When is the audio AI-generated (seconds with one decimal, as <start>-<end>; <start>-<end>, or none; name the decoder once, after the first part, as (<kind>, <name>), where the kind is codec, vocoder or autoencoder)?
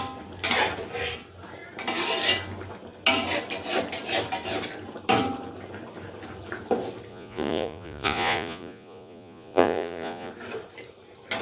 7.1-10.3 (vocoder, Vocos)